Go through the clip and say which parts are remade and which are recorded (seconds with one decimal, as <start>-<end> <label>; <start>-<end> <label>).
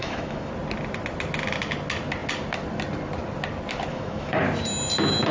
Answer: 0.0-0.5 remade; 0.5-3.9 recorded; 3.9-4.4 remade; 4.4-5.3 recorded